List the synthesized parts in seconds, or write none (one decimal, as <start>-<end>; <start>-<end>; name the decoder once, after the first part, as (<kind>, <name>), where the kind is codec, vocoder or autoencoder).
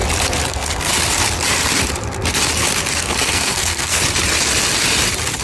0.5-0.9 (codec, SNAC); 2.9-4.0